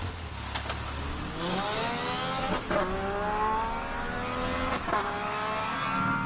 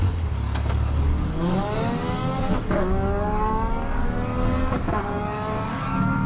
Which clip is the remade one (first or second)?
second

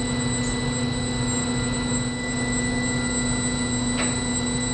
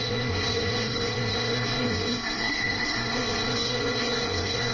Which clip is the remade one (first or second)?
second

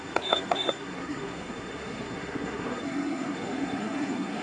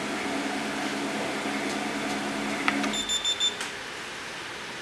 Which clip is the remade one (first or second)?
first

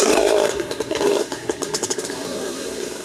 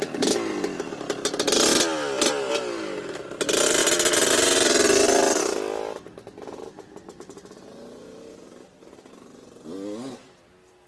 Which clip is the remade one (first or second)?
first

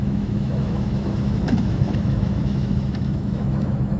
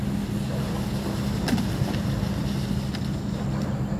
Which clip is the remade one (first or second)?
first